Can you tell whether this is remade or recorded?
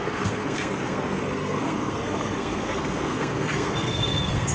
remade